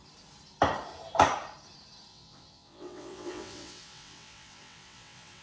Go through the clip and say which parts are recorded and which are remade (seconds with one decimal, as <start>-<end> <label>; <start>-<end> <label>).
0.0-2.1 recorded; 2.1-5.4 remade